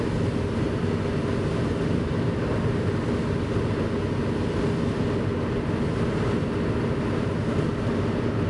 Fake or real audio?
real